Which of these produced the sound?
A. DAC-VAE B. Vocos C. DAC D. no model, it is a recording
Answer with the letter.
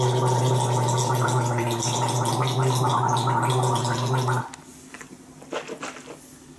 D